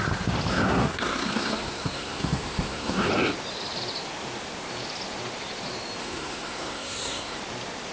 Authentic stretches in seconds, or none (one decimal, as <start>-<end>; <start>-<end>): 0.0-0.5; 3.1-6.0; 7.4-7.9